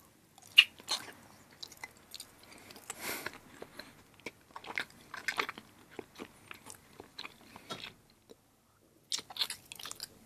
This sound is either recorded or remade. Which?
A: recorded